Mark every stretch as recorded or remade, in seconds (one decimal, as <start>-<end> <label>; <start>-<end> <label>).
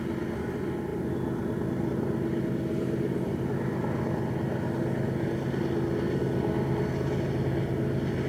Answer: 0.0-8.3 recorded